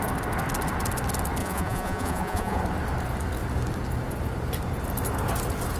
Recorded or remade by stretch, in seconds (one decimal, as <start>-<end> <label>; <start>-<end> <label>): 0.0-1.4 recorded; 1.4-2.6 remade; 2.6-5.8 recorded